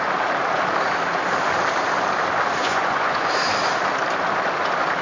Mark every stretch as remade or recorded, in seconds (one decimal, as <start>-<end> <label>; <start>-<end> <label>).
0.0-2.6 recorded; 2.6-3.3 remade; 3.3-5.0 recorded